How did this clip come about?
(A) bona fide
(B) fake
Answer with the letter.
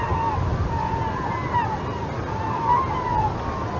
A